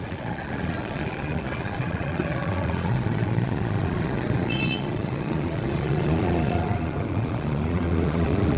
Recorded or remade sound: remade